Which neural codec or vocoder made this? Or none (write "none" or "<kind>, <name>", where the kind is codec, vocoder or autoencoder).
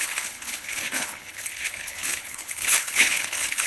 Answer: codec, HILCodec